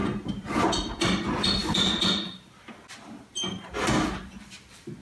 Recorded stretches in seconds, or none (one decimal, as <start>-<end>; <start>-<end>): 0.0-5.0